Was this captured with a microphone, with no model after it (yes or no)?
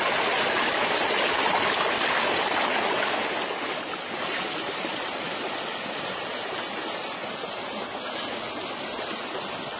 yes